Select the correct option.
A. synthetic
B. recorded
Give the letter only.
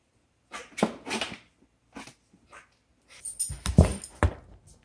B